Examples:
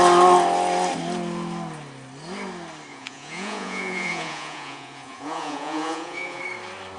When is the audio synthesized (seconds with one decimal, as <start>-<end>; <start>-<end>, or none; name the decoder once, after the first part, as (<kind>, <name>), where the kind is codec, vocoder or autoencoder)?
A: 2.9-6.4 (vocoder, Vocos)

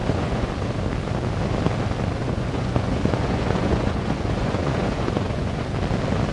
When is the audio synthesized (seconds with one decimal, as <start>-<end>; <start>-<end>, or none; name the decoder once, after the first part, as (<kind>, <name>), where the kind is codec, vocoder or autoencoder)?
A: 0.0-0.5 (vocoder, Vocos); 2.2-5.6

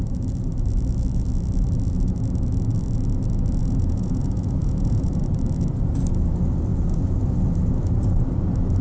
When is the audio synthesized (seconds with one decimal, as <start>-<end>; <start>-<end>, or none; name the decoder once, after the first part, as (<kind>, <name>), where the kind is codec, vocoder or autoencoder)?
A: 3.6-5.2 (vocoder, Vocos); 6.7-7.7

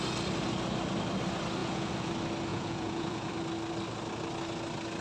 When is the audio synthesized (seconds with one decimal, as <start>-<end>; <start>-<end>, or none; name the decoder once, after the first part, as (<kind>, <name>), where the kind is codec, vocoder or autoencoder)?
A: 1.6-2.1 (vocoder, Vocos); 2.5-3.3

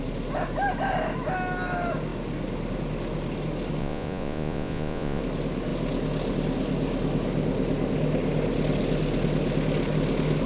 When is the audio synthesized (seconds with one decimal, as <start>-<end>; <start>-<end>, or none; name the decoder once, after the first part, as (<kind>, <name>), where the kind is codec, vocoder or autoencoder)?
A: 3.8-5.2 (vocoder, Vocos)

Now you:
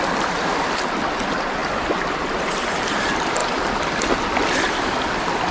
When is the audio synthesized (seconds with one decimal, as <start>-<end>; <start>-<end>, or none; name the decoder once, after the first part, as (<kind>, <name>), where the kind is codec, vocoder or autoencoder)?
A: none

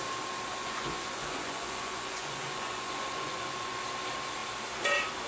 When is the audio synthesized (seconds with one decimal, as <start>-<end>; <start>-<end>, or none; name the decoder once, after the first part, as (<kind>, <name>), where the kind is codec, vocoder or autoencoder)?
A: 0.6-3.8 (vocoder, Vocos)